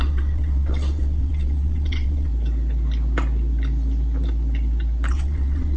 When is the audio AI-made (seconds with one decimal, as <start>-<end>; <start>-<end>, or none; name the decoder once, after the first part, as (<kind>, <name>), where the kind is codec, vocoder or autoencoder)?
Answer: 0.0-2.3 (vocoder, WaveNeXt); 5.1-5.8